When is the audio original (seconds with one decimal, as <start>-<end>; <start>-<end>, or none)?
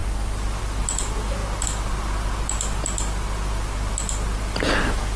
0.0-5.2